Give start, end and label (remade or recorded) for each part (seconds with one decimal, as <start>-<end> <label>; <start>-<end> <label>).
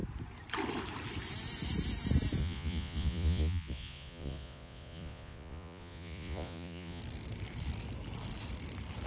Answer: 0.0-2.4 recorded; 2.4-7.0 remade; 7.0-9.1 recorded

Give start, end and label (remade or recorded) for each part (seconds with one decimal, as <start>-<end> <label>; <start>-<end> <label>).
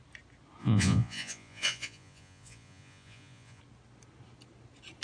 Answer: 0.0-0.6 recorded; 0.6-3.6 remade; 3.6-5.0 recorded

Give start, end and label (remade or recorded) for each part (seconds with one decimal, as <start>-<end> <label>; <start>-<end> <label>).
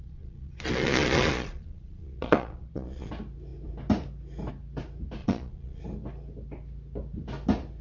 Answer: 0.0-3.1 remade; 3.1-5.2 recorded; 5.2-5.8 remade; 5.8-7.8 recorded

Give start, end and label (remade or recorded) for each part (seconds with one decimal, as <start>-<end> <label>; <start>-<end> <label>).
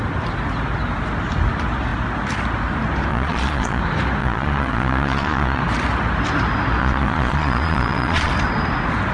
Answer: 0.0-3.1 recorded; 3.1-3.8 remade; 3.8-4.2 recorded; 4.2-5.6 remade; 5.6-6.8 recorded; 6.8-8.3 remade; 8.3-9.1 recorded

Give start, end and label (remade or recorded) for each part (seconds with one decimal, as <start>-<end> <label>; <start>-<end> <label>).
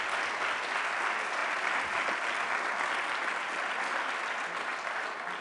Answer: 0.0-5.4 recorded